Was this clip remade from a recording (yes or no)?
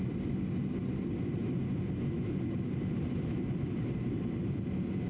no